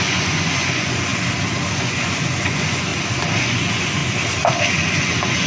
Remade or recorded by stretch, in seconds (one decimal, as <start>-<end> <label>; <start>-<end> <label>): 0.0-1.1 remade; 1.1-1.7 recorded; 1.7-2.9 remade; 2.9-3.4 recorded; 3.4-4.0 remade; 4.0-4.9 recorded; 4.9-5.5 remade